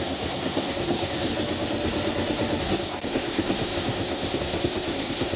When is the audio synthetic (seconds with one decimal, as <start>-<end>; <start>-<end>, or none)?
0.0-1.3; 2.6-5.4